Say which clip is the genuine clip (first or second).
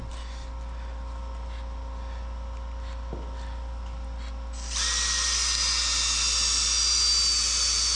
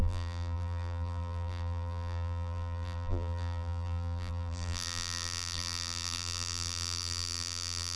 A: first